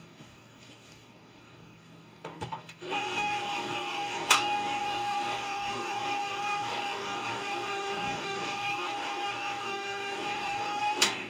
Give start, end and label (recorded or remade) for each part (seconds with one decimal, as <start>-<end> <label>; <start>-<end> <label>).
0.0-11.3 remade